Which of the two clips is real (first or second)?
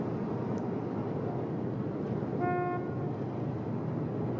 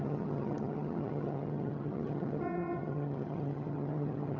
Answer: first